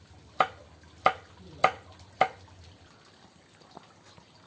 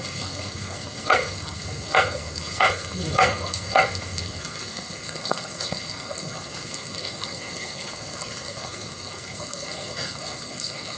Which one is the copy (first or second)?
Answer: second